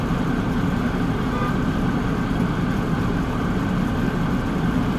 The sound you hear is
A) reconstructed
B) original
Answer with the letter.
B